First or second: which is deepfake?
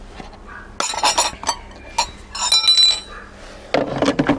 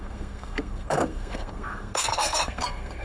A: second